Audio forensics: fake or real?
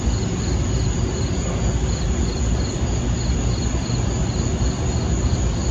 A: real